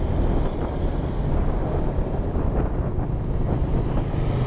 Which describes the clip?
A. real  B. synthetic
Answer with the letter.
A